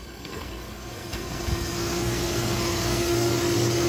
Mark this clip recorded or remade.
remade